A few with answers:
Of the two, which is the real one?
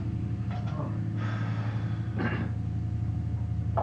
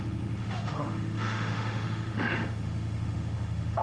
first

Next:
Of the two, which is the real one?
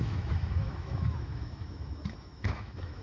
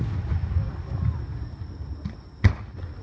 second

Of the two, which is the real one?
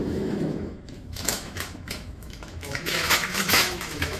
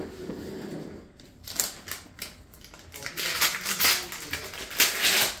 second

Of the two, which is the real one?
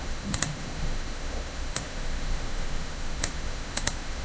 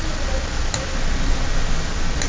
second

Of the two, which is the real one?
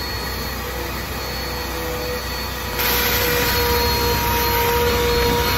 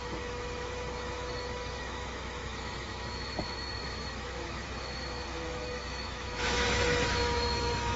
first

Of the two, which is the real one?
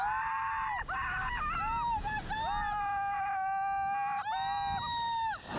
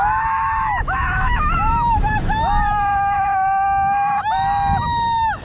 first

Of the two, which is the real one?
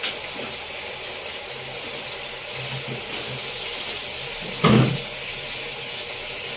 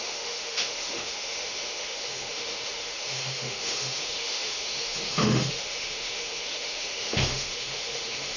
first